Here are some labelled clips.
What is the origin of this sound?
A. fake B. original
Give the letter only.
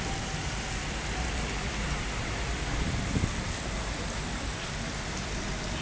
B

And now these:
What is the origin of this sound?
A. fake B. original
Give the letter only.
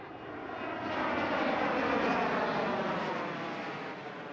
B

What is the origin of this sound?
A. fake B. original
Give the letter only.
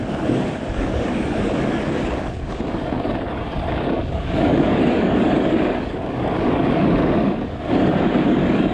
A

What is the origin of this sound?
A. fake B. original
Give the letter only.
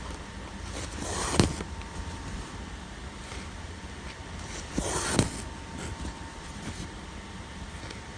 B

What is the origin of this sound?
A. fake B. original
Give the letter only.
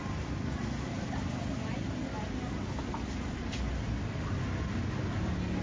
B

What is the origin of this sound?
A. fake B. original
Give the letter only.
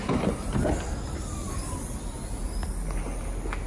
B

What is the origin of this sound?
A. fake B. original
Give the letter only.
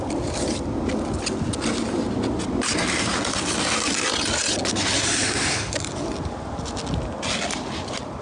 B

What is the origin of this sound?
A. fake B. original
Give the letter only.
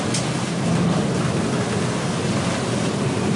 B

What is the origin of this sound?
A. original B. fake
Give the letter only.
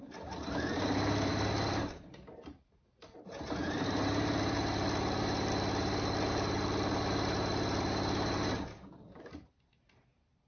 B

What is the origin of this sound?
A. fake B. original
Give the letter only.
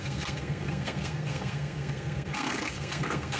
A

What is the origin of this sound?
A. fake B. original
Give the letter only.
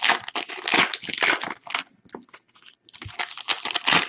B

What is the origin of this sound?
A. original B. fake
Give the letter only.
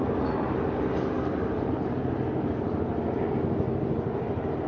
A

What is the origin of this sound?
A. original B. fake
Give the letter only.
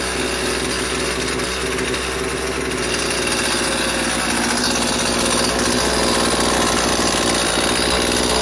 A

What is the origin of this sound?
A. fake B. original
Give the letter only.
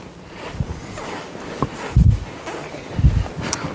B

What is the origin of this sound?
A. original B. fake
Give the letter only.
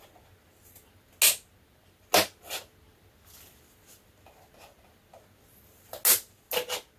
A